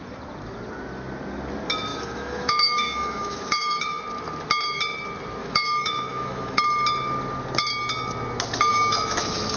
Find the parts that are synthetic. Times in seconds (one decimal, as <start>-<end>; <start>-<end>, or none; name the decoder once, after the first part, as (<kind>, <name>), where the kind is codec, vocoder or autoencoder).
1.9-4.0 (autoencoder, DAC-VAE); 5.4-6.6; 8.7-9.6